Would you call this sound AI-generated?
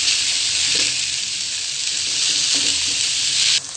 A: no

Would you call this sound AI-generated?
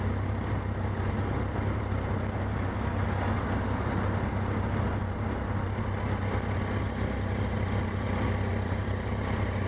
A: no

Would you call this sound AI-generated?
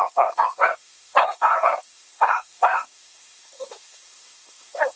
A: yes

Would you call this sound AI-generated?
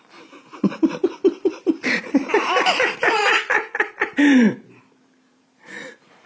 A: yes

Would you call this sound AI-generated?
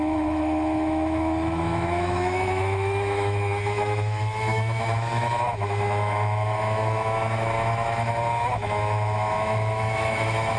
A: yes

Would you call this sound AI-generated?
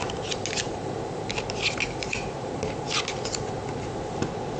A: no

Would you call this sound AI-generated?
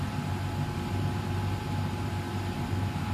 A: no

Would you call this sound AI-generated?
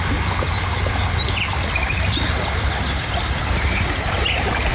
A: yes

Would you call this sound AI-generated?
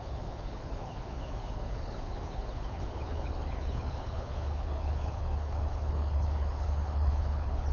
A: yes